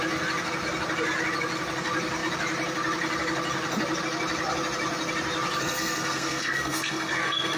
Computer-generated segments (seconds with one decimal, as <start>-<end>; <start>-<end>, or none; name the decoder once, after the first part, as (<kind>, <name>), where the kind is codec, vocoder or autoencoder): 5.6-7.6 (codec, SNAC)